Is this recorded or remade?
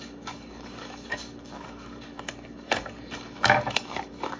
remade